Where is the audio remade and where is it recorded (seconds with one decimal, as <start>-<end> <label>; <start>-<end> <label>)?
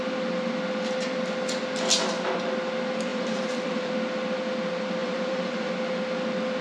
0.0-3.1 recorded; 3.1-3.9 remade; 3.9-5.0 recorded; 5.0-5.7 remade; 5.7-6.6 recorded